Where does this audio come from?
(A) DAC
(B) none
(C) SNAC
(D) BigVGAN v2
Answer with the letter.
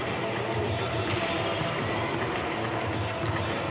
B